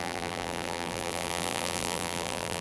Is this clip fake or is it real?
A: fake